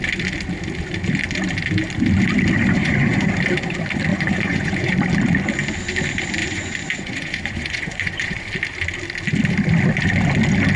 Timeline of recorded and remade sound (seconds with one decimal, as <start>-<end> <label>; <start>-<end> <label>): 0.0-2.8 recorded; 2.8-3.3 remade; 3.3-4.1 recorded; 4.1-4.9 remade; 4.9-6.4 recorded; 6.4-8.5 remade; 8.5-10.8 recorded